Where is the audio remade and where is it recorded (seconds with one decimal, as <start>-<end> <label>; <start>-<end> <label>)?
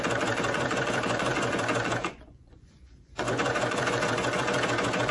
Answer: 0.0-5.1 remade